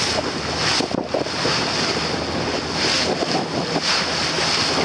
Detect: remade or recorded recorded